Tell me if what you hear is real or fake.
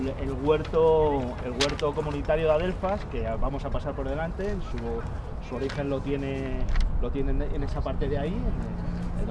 real